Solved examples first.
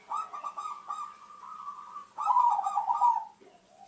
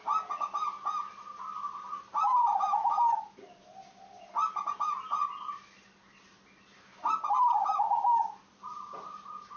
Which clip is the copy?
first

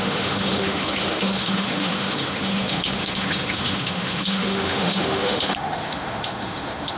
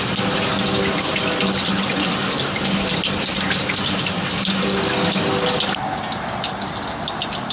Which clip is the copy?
first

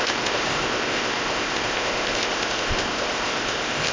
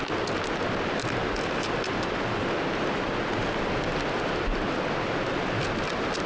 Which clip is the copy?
first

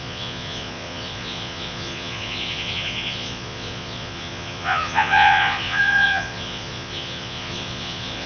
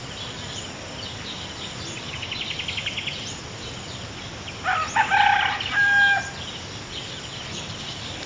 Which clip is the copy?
first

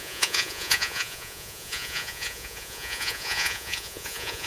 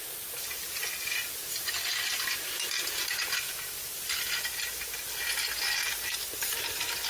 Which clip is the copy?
first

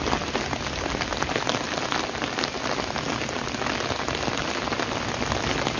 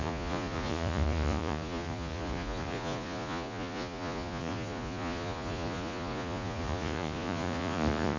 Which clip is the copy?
second